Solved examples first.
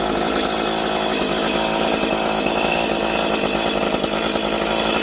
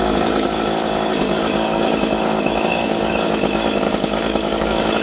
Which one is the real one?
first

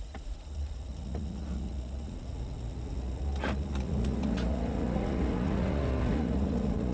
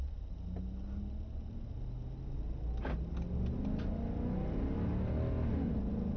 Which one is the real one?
second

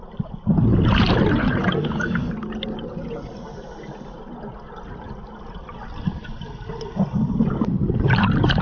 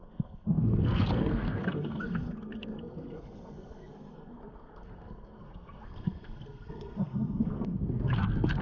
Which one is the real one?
first